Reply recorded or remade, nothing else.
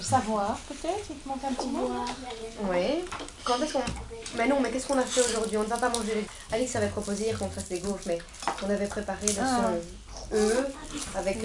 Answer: recorded